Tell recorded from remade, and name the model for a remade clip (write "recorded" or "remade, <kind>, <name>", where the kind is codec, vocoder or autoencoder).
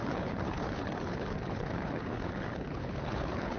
remade, codec, HILCodec